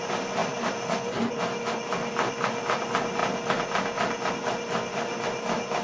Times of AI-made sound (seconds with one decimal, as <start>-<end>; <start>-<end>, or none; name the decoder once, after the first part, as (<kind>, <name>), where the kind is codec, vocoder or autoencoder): none